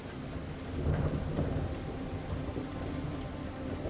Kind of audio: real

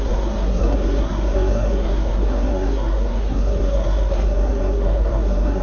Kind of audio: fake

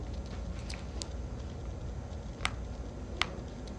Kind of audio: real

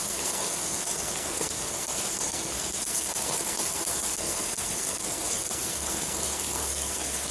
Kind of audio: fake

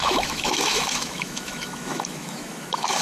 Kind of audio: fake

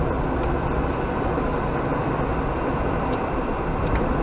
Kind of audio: fake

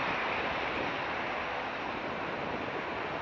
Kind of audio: fake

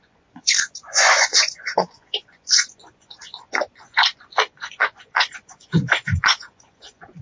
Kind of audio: fake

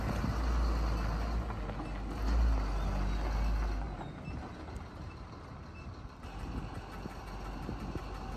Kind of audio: real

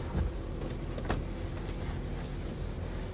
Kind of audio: real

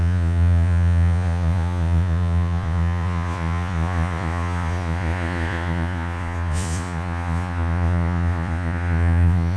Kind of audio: fake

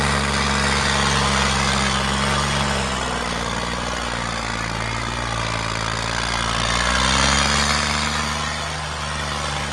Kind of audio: real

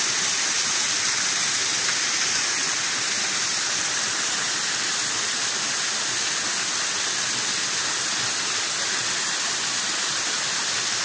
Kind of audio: real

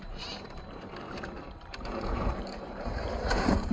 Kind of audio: fake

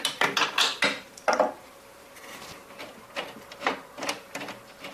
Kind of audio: real